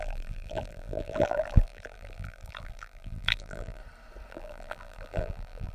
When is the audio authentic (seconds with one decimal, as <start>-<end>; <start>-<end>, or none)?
3.8-4.3